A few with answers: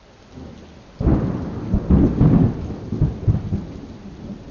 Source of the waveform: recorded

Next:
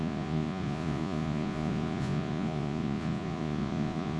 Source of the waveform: remade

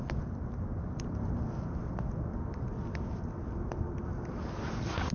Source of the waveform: recorded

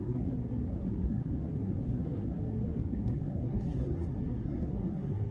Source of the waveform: remade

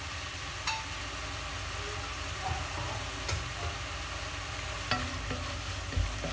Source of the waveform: recorded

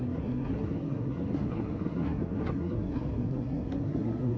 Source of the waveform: remade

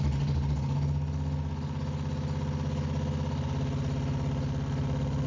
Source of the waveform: recorded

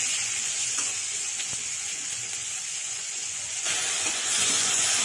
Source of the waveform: remade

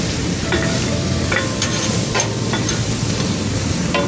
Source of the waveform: remade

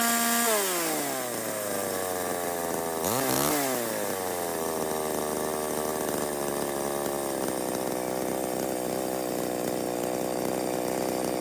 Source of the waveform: recorded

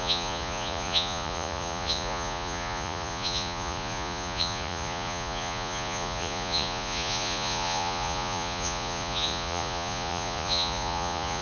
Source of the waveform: remade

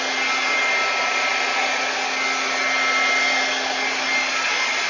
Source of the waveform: recorded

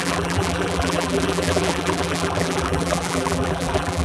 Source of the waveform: remade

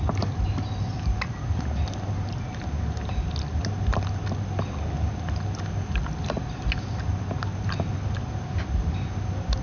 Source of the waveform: recorded